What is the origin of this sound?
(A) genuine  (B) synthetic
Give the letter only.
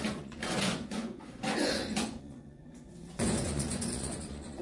B